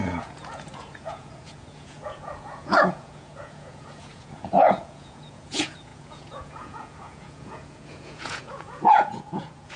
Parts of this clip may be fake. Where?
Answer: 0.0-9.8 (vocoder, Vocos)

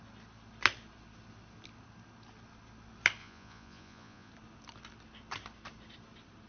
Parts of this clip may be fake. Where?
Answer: 3.2-4.3 (vocoder, Vocos)

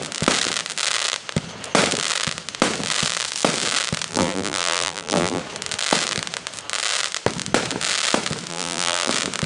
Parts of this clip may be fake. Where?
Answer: 4.1-5.4 (vocoder, BigVGAN v2); 8.5-9.1

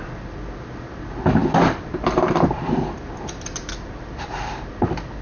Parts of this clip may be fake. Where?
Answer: none

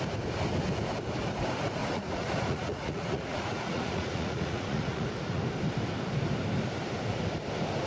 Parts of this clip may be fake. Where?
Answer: 1.8-5.4 (vocoder, Vocos)

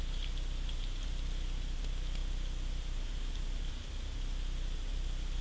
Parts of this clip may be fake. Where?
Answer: none

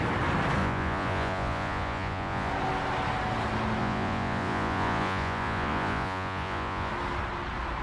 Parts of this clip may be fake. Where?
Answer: 0.6-2.5 (vocoder, Vocos); 3.8-6.9